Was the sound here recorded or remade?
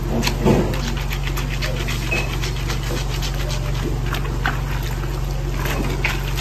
recorded